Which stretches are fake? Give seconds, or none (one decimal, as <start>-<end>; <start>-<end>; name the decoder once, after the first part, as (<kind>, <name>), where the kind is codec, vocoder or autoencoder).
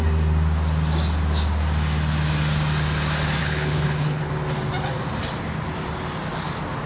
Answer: 3.4-4.3 (codec, HILCodec)